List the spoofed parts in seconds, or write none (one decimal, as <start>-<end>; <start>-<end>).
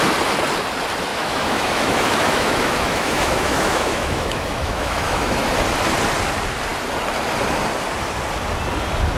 1.1-5.4